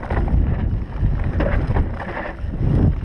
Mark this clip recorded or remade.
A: recorded